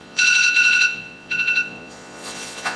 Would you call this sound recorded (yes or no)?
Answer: no